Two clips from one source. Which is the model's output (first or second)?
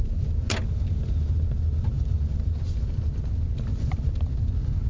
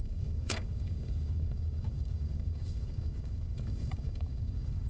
second